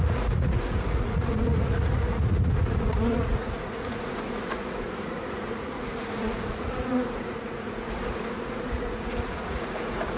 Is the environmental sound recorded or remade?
remade